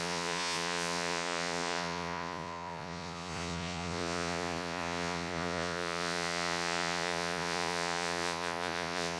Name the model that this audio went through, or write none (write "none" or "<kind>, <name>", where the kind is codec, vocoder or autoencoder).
vocoder, Vocos